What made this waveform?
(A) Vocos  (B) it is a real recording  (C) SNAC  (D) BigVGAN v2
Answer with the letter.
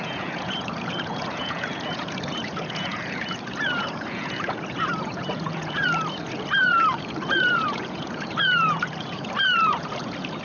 A